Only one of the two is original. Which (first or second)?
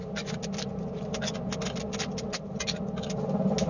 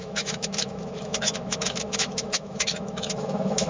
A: first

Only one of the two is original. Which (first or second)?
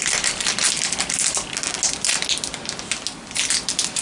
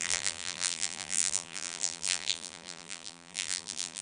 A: first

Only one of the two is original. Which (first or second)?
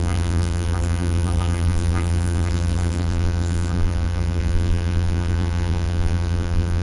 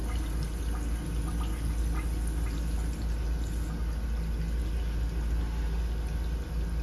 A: second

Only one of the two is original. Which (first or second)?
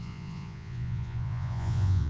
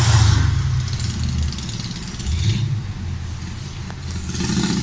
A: second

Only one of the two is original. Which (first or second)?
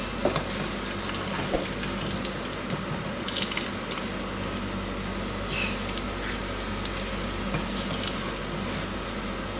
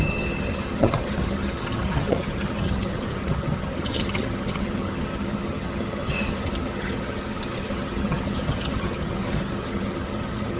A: first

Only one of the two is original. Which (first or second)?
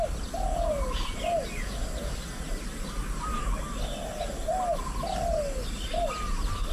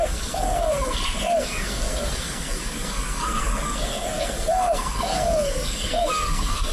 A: first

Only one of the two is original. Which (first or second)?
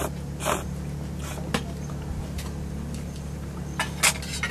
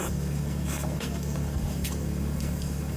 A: first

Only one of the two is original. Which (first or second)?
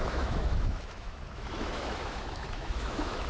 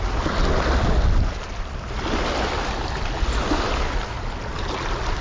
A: second